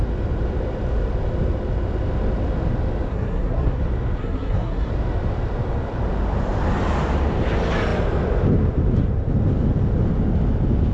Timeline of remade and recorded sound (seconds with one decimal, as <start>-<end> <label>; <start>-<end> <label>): 0.0-3.1 recorded; 3.1-3.8 remade; 3.8-4.2 recorded; 4.2-4.9 remade; 4.9-10.9 recorded